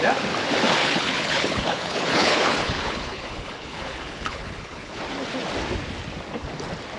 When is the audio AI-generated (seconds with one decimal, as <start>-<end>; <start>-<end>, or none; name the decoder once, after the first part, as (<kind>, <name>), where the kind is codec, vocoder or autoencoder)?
0.8-5.0 (codec, HILCodec)